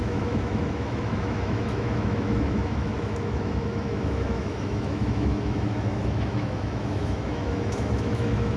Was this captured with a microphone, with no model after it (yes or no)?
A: no